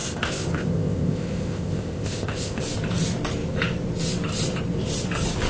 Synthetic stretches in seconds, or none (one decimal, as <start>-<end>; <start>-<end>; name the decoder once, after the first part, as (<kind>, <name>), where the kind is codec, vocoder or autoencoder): 0.0-2.6 (codec, ZipCodec)